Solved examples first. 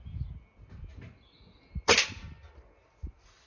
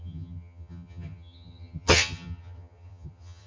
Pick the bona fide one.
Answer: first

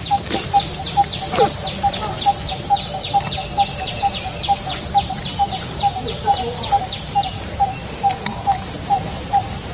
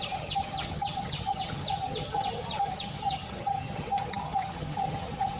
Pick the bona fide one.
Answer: first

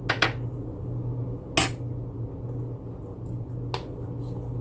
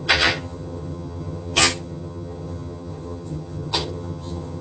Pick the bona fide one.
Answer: first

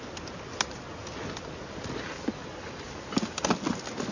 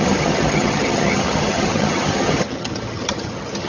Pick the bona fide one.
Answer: first